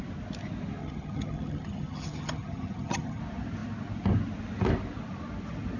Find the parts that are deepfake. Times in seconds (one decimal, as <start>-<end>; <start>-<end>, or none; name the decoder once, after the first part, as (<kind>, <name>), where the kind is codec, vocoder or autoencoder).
0.8-3.2 (vocoder, HiFi-GAN)